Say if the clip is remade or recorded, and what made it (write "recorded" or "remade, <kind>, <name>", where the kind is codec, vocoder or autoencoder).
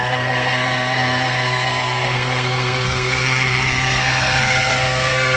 remade, codec, SNAC